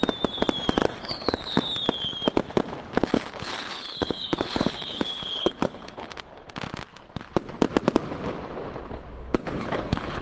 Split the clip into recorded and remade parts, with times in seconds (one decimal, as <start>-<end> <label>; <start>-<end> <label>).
0.0-0.8 recorded; 0.8-1.6 remade; 1.6-3.0 recorded; 3.0-6.1 remade; 6.1-9.3 recorded; 9.3-10.2 remade